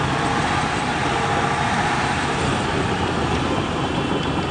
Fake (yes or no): no